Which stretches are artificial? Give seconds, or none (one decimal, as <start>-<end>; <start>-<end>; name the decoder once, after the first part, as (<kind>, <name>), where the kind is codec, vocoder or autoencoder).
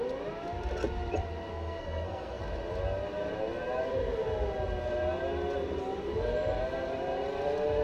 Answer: 1.5-2.4 (codec, SNAC)